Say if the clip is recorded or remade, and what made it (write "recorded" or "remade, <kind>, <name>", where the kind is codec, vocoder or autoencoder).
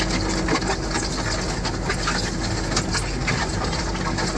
recorded